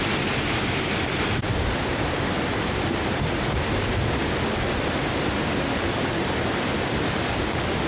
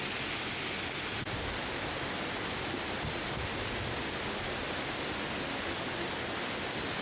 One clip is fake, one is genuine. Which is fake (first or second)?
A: first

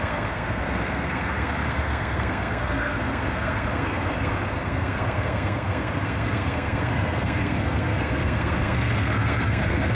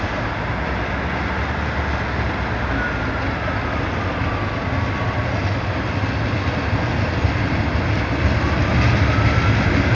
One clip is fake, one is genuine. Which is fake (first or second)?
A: first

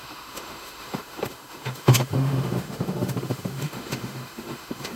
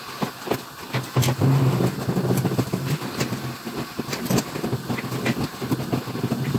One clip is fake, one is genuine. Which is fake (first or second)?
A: first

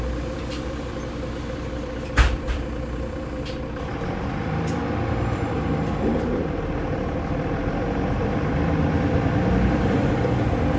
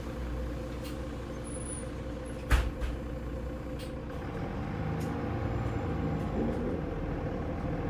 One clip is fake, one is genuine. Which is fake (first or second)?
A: first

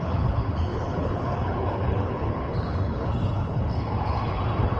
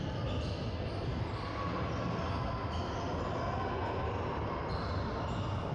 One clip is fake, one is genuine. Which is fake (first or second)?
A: first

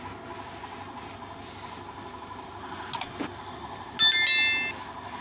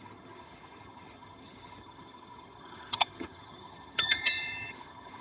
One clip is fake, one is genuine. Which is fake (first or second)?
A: second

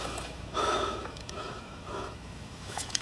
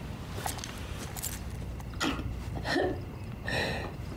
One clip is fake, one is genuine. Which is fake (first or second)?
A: first